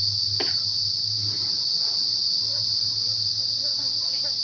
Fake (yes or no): no